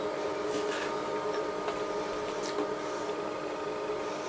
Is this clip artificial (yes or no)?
no